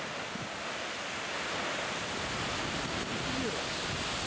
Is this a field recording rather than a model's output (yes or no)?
yes